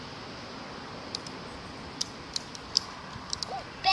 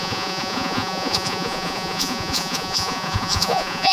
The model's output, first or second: second